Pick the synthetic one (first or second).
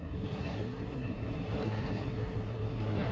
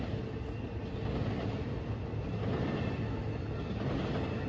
first